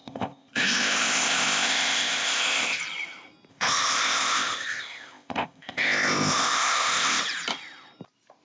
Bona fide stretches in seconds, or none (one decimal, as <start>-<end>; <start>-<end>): 2.8-3.5; 7.2-8.4